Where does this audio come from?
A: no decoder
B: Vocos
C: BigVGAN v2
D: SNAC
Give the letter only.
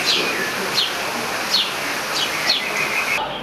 A